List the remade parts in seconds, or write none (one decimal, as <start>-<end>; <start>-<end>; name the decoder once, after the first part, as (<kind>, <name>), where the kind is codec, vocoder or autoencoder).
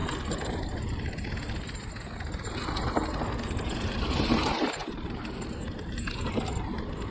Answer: 4.8-6.1 (vocoder, BigVGAN v2)